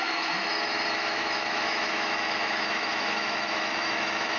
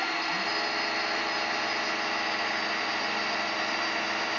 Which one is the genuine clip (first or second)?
second